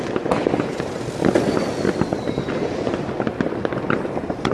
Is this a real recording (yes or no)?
yes